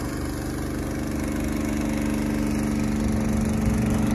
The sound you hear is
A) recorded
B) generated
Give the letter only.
A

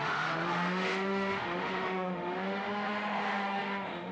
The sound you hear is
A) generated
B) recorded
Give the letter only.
A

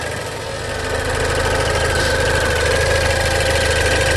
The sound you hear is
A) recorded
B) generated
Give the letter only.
A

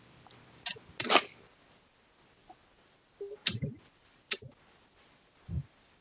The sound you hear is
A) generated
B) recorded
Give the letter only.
B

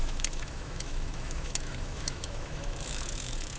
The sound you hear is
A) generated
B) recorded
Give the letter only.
A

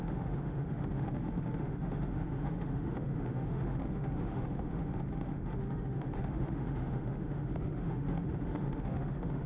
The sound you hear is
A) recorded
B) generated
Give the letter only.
B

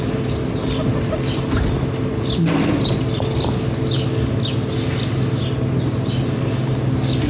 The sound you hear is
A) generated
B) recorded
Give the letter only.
B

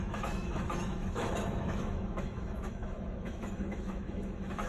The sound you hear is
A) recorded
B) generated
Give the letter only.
B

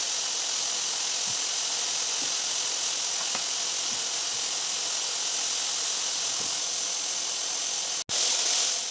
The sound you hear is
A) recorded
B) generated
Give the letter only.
A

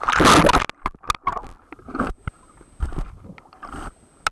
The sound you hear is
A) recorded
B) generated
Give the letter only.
A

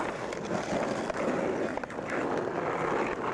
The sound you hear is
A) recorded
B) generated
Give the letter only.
A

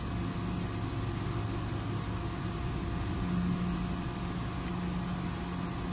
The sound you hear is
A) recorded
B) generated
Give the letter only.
A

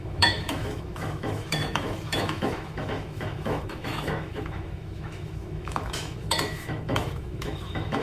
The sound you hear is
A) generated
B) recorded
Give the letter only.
A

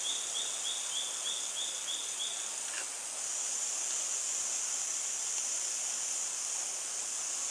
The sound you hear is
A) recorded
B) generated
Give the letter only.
A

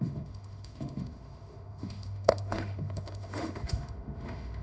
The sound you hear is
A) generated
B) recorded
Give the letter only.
A